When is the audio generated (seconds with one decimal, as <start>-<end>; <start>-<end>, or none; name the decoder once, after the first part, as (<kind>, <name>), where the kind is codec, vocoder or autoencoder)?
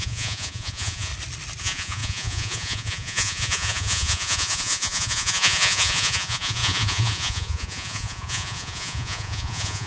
0.0-1.1 (vocoder, Vocos); 1.6-9.9